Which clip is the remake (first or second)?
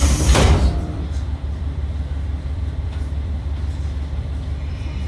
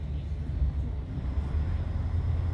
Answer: first